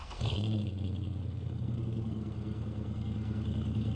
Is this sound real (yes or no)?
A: no